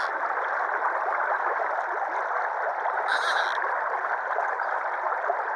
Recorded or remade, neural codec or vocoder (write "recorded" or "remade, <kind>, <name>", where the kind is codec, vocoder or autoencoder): recorded